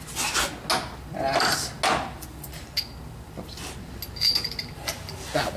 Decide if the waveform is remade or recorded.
recorded